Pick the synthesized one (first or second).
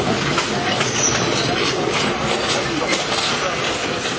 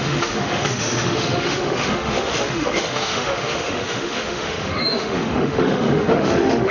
second